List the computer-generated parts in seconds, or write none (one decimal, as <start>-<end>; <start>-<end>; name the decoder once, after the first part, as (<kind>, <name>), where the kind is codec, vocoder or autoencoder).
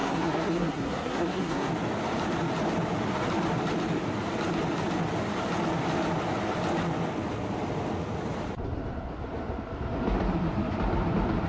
0.0-1.7 (codec, SNAC)